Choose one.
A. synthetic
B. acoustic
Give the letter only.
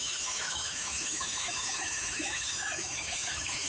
A